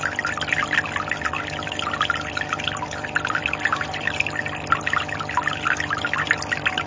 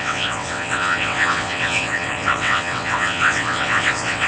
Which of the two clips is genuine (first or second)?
first